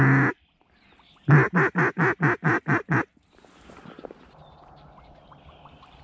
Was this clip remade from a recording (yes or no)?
no